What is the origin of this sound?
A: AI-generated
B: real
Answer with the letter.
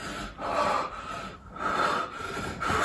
B